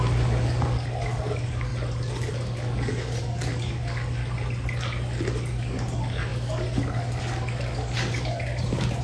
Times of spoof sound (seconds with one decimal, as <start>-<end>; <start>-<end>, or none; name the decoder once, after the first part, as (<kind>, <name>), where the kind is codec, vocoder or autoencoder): 0.0-1.7 (codec, DAC); 2.3-4.2; 5.3-9.0